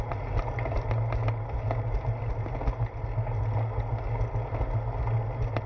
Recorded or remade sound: recorded